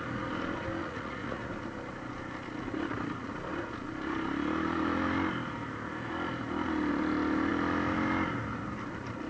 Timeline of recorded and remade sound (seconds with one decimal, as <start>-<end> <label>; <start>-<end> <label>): 0.0-0.8 recorded; 0.8-1.5 remade; 1.5-9.3 recorded